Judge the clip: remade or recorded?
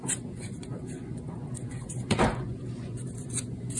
remade